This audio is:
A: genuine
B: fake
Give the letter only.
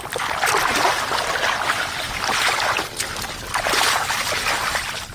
A